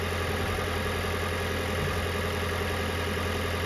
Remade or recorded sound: recorded